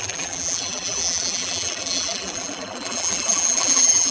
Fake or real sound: fake